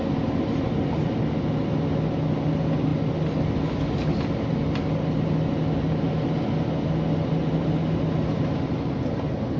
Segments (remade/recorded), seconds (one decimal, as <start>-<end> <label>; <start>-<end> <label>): 0.0-9.6 recorded